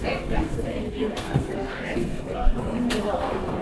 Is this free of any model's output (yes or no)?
no